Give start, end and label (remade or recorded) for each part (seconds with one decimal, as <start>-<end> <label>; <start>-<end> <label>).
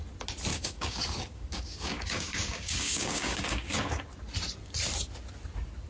0.0-0.5 recorded; 0.5-4.0 remade; 4.0-5.9 recorded